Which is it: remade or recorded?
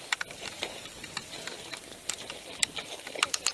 recorded